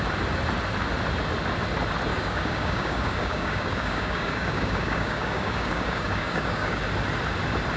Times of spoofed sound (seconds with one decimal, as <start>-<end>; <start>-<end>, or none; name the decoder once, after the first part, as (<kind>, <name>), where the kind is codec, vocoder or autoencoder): 2.1-6.8 (codec, DAC)